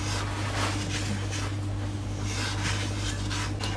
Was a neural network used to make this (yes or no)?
no